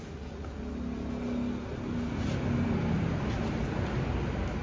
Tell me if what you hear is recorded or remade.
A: recorded